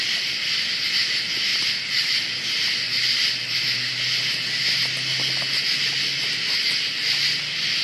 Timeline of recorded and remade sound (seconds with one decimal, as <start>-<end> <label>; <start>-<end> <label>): 0.0-7.8 recorded

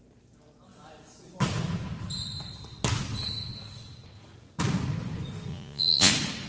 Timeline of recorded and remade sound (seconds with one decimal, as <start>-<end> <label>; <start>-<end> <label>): 0.0-5.5 recorded; 5.5-6.1 remade; 6.1-6.5 recorded